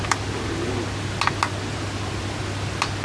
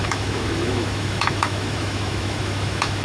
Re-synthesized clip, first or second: second